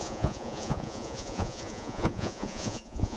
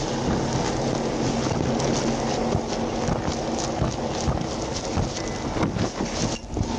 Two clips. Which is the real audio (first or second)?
second